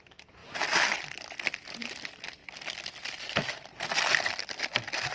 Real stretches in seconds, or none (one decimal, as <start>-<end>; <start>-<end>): 0.0-0.4; 1.1-2.4; 3.2-5.1